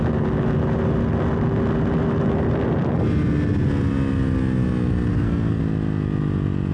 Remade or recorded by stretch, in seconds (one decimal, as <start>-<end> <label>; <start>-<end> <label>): 0.0-5.1 recorded; 5.1-5.6 remade; 5.6-6.7 recorded